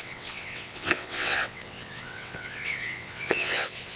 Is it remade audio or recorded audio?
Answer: remade